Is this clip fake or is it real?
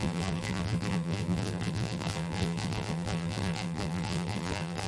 fake